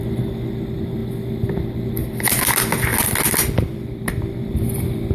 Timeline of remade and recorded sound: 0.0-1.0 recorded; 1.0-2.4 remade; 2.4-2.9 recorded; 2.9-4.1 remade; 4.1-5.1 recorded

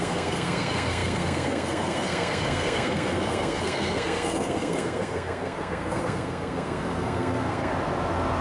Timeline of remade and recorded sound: 0.0-7.7 remade; 7.7-8.4 recorded

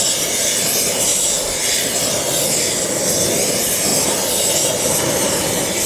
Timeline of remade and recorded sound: 0.0-5.9 recorded